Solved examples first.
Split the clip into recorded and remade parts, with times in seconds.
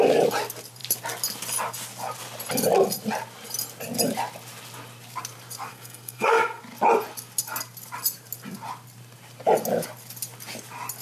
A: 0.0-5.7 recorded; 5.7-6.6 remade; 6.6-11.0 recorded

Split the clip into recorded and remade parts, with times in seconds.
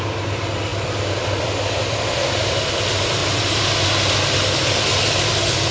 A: 0.0-3.2 remade; 3.2-5.2 recorded; 5.2-5.7 remade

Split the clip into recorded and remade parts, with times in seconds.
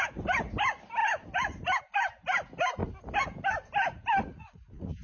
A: 0.0-4.3 recorded; 4.3-5.0 remade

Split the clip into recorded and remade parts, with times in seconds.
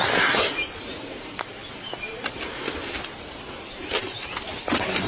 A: 0.0-1.6 recorded; 1.6-5.1 remade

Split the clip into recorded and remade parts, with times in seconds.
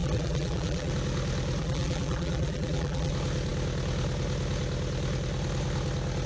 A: 0.0-0.9 remade; 0.9-1.6 recorded; 1.6-3.1 remade; 3.1-6.3 recorded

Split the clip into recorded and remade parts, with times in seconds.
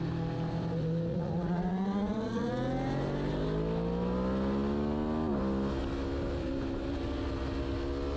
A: 0.0-1.1 recorded; 1.1-2.5 remade; 2.5-8.2 recorded